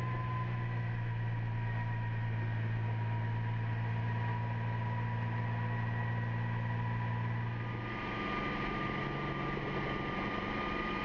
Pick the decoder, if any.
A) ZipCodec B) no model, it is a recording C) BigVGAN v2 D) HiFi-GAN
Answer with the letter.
B